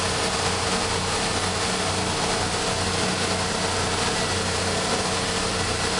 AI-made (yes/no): no